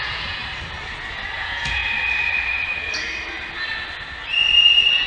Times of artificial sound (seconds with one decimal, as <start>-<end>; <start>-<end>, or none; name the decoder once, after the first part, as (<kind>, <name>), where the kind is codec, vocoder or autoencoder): 0.0-0.4 (vocoder, Vocos); 1.4-1.8